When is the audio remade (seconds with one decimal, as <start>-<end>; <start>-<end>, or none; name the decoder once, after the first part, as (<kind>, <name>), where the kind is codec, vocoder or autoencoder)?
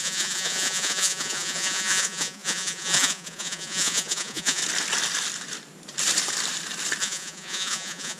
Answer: 0.0-4.6 (vocoder, Vocos); 7.0-8.2